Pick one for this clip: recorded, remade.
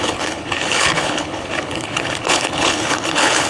remade